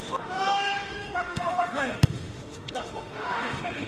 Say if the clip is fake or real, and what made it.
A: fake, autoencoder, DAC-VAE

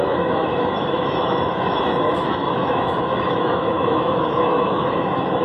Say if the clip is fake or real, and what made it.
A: fake, autoencoder, DAC-VAE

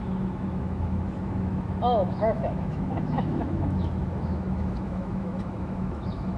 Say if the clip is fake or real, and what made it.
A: fake, autoencoder, DAC-VAE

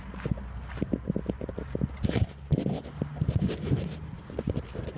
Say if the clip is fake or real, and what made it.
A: real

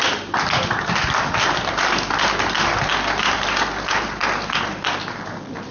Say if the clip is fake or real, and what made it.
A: real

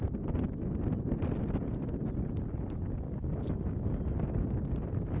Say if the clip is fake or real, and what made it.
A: real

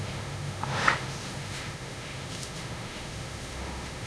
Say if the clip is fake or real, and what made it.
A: fake, autoencoder, DAC-VAE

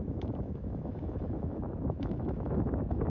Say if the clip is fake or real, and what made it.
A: fake, autoencoder, DAC-VAE